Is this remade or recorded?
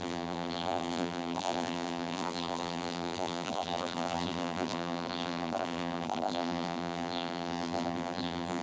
remade